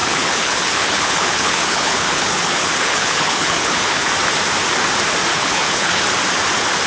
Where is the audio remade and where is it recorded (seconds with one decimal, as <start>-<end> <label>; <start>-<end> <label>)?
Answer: 0.0-4.1 remade; 4.1-5.3 recorded; 5.3-6.0 remade; 6.0-6.9 recorded